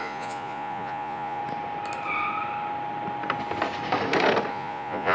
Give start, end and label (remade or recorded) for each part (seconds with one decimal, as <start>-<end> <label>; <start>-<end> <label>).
0.0-1.4 remade; 1.4-4.5 recorded; 4.5-5.1 remade